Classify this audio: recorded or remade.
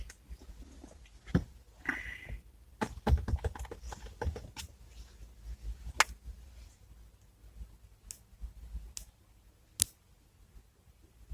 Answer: recorded